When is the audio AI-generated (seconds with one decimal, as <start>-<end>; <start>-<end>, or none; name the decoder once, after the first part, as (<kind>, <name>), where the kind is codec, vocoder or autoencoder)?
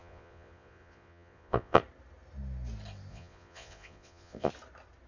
0.0-1.8 (vocoder, Vocos); 3.1-4.5